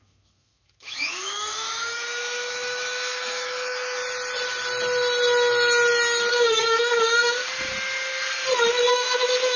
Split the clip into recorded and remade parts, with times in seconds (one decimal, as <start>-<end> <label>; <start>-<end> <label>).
0.0-4.0 remade; 4.0-6.3 recorded; 6.3-7.4 remade; 7.4-8.9 recorded; 8.9-9.6 remade